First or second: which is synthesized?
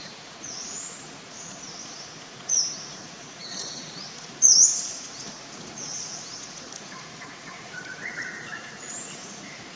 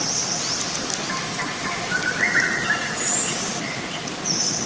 first